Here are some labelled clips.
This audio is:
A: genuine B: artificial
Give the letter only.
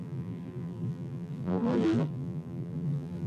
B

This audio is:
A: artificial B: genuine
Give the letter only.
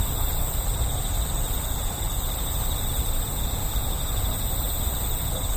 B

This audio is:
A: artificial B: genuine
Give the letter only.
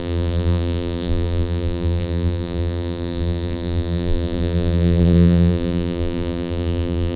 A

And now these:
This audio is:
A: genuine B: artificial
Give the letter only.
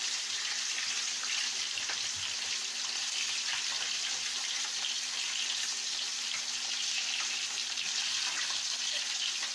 B